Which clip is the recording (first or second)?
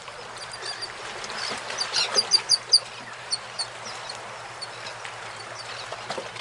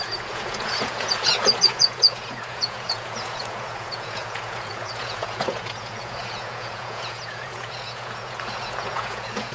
first